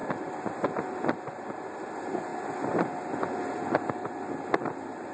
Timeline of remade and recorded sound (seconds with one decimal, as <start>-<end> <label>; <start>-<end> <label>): 0.0-5.1 recorded